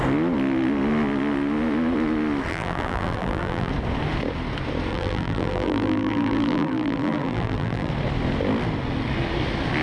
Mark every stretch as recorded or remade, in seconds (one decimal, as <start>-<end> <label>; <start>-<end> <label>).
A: 0.0-2.5 recorded; 2.5-3.7 remade; 3.7-4.9 recorded; 4.9-7.9 remade; 7.9-9.8 recorded

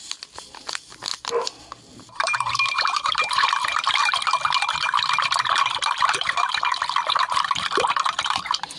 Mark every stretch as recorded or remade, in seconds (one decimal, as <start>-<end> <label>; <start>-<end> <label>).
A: 0.0-1.1 remade; 1.1-2.0 recorded; 2.0-4.0 remade; 4.0-6.0 recorded; 6.0-6.5 remade; 6.5-8.3 recorded; 8.3-8.8 remade

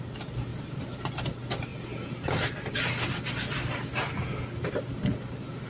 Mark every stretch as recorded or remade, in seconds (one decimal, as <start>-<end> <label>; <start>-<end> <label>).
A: 0.0-0.5 recorded; 0.5-1.1 remade; 1.1-5.7 recorded